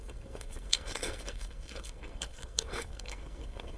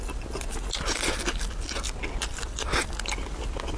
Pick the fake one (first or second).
first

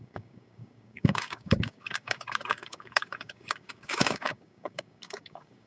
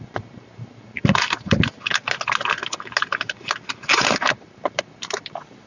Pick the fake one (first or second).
first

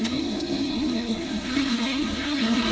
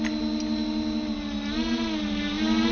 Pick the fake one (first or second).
first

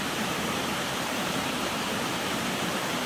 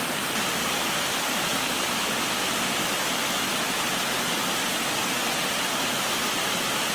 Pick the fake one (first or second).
first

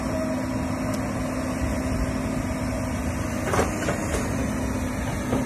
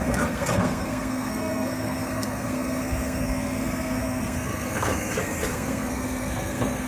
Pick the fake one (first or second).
second